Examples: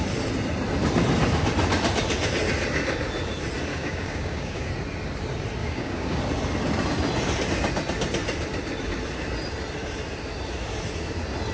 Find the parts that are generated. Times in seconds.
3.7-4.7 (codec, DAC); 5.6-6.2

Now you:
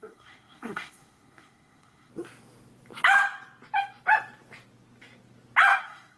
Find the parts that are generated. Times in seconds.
0.0-2.1 (codec, SNAC); 5.8-6.2

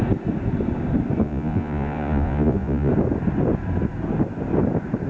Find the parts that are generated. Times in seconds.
1.2-2.9 (vocoder, Vocos)

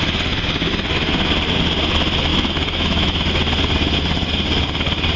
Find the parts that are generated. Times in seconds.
2.3-3.3 (autoencoder, DAC-VAE)